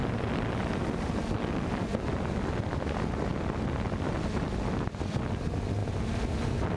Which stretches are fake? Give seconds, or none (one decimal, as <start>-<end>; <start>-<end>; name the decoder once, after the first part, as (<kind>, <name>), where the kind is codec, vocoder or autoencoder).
none